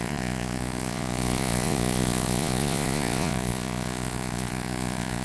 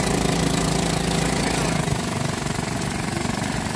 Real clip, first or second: second